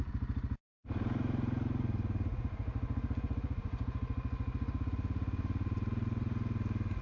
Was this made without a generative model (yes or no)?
yes